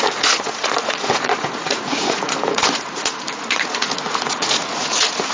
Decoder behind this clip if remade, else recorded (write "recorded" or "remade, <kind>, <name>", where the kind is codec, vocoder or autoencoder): remade, vocoder, Vocos